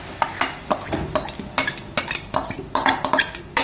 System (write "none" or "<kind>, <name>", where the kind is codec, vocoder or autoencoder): none